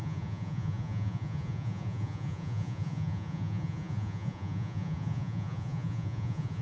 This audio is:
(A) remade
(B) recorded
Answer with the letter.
A